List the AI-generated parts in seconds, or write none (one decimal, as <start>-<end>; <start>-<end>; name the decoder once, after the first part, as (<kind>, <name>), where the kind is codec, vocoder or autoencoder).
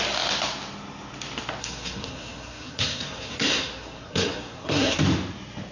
1.6-5.0 (codec, SNAC)